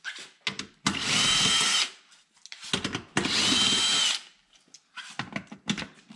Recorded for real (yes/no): yes